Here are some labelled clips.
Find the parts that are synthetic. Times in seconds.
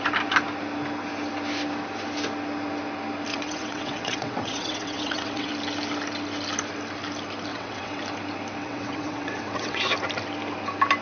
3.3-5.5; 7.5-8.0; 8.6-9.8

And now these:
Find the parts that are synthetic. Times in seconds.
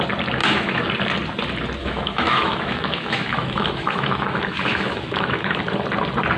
0.4-0.9; 1.8-5.6